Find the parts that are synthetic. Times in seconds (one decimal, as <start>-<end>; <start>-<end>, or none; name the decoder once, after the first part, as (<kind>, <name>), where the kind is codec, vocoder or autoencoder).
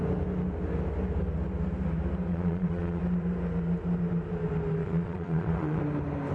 2.3-3.0 (vocoder, Vocos); 4.8-5.8